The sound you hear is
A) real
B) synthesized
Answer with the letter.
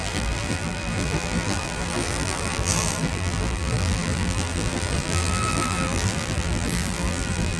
B